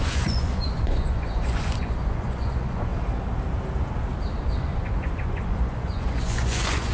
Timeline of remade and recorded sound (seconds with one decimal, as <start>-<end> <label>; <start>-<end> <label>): 0.0-2.9 remade; 2.9-4.6 recorded; 4.6-6.9 remade